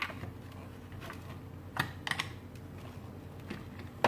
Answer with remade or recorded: recorded